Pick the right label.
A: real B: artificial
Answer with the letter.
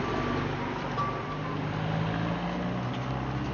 A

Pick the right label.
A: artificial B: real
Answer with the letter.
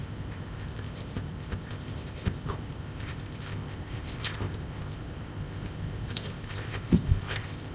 A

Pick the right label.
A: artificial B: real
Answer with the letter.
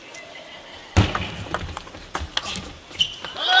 B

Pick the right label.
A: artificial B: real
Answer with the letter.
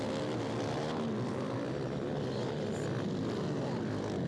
B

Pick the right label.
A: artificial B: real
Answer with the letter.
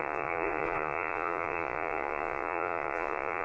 A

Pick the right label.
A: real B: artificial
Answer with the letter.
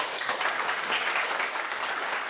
B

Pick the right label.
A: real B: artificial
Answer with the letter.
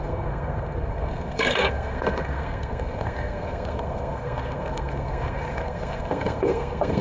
B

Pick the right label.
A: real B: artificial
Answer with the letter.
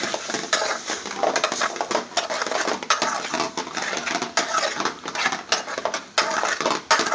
A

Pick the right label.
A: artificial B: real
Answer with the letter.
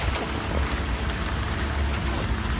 B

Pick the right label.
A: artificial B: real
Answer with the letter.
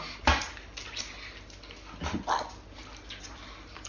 B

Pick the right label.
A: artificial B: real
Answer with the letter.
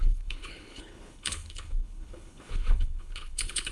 A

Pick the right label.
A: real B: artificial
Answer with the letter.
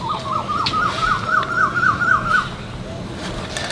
A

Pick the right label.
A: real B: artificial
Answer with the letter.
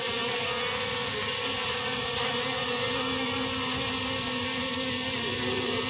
A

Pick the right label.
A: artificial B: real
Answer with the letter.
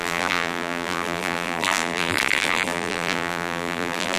A